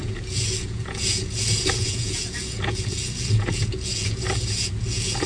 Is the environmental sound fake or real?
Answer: fake